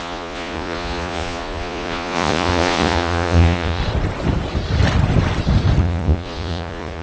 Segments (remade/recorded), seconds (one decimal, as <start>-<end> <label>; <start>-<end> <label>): 0.0-3.8 remade; 3.8-5.8 recorded; 5.8-7.0 remade